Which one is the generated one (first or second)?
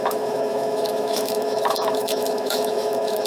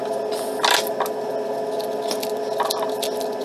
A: first